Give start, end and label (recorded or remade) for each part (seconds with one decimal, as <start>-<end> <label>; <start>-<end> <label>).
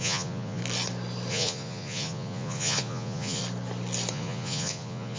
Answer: 0.0-0.6 remade; 0.6-1.3 recorded; 1.3-3.4 remade; 3.4-4.1 recorded; 4.1-5.2 remade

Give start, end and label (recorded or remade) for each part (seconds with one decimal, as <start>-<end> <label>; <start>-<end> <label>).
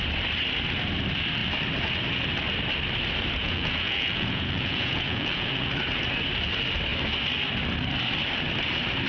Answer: 0.0-3.4 recorded; 3.4-5.7 remade; 5.7-9.1 recorded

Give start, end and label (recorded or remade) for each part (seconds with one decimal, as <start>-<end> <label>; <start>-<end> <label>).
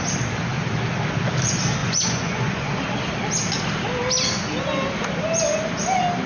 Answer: 0.0-1.8 recorded; 1.8-2.7 remade; 2.7-6.3 recorded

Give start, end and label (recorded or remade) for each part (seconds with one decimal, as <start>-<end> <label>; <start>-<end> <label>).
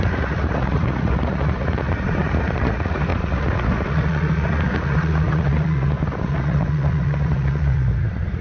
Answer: 0.0-8.4 remade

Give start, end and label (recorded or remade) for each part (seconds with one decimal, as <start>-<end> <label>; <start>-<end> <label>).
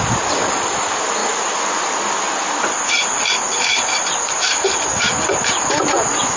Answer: 0.0-6.4 recorded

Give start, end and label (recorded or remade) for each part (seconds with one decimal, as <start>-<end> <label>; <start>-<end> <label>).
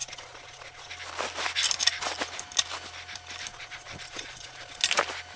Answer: 0.0-0.9 remade; 0.9-3.5 recorded; 3.5-4.8 remade; 4.8-5.4 recorded